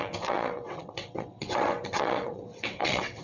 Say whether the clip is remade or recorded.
remade